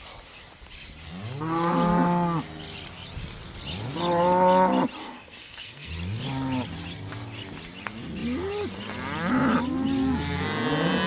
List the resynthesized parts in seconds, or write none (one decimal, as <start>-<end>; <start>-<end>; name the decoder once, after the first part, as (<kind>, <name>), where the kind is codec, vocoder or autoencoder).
5.0-5.9 (codec, SNAC)

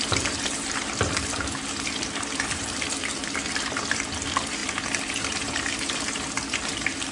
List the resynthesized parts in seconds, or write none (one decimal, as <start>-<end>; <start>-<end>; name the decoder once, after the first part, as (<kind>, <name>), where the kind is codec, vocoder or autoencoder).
0.0-7.1 (vocoder, BigVGAN v2)